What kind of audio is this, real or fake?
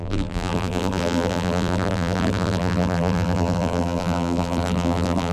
fake